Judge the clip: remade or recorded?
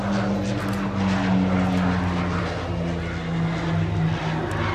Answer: recorded